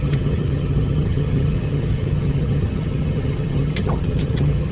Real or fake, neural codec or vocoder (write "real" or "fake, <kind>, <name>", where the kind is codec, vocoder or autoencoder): fake, vocoder, HiFi-GAN